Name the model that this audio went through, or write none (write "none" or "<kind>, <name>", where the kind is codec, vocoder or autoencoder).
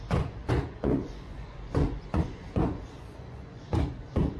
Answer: vocoder, Vocos